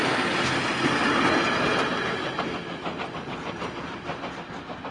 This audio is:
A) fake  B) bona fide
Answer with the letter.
B